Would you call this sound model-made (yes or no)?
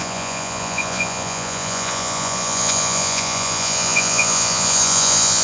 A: yes